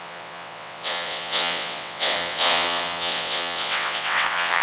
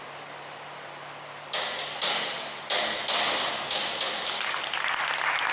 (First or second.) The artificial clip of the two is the first